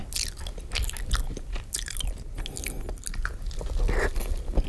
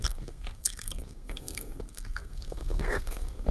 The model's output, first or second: second